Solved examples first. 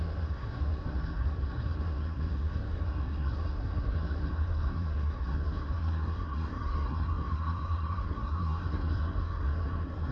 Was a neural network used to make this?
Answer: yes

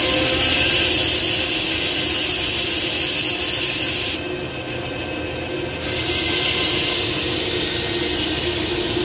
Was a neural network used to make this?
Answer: no